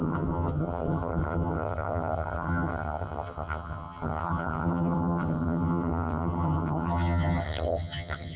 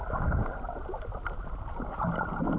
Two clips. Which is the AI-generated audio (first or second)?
first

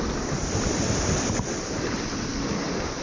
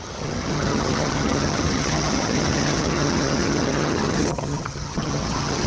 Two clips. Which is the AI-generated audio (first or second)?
second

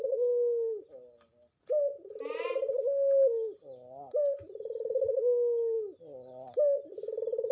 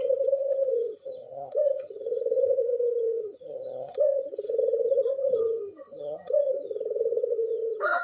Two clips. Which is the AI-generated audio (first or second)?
second